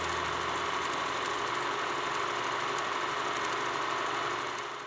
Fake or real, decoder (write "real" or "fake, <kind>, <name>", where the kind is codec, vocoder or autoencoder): real